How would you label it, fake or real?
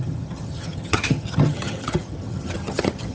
fake